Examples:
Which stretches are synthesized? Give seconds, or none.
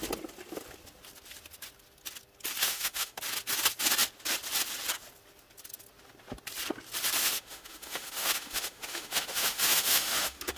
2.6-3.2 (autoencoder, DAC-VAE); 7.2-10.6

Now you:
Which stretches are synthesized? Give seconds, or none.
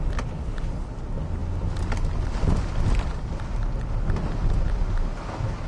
none